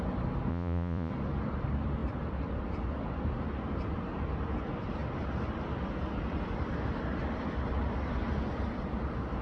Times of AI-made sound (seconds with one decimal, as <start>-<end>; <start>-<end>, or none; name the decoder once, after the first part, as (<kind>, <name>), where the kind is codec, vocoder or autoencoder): 0.5-1.1 (vocoder, Vocos)

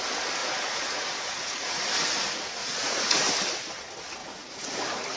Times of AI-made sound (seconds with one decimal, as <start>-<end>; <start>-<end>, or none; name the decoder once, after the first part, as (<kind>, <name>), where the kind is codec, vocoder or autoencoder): 0.4-1.8 (vocoder, Vocos); 2.6-3.3; 4.2-4.8